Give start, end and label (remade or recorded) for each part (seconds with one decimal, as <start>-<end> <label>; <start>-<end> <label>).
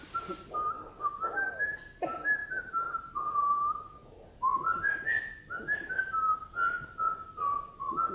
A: 0.0-8.1 recorded